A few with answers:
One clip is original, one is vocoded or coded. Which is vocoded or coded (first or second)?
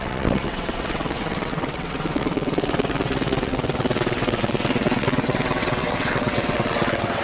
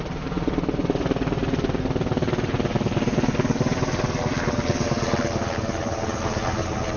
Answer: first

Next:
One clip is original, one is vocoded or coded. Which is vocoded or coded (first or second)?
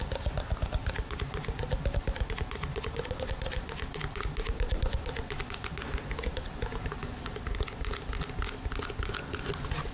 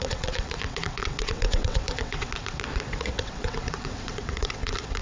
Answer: second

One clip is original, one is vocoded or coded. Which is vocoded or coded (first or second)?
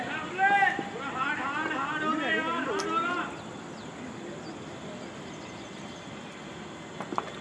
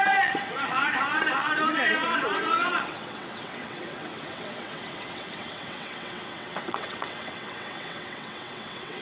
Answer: second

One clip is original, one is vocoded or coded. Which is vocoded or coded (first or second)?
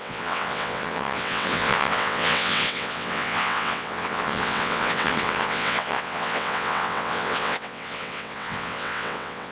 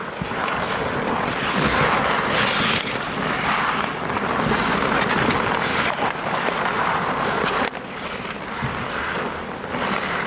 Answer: first